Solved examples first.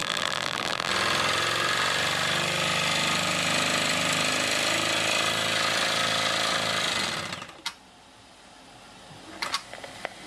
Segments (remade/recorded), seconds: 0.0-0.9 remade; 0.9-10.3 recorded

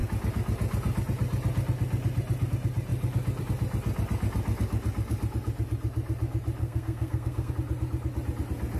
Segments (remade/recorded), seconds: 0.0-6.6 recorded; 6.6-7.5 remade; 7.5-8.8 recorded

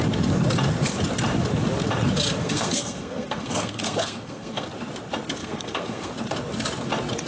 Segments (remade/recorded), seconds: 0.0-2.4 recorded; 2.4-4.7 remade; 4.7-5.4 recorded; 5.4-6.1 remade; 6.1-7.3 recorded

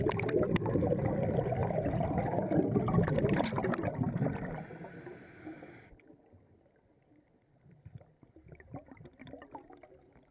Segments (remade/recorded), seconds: 0.0-10.3 recorded

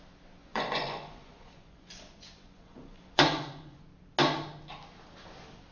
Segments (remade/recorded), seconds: 0.0-0.4 recorded; 0.4-3.8 remade; 3.8-5.7 recorded

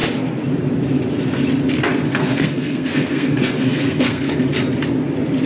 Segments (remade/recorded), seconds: 0.0-2.1 recorded; 2.1-4.3 remade; 4.3-5.5 recorded